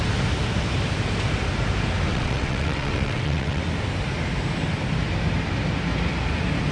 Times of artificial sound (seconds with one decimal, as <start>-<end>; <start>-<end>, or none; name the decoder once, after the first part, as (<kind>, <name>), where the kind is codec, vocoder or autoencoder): 2.1-3.6 (vocoder, WaveNeXt)